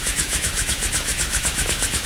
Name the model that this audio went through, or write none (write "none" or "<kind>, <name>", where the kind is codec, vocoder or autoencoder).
autoencoder, DAC-VAE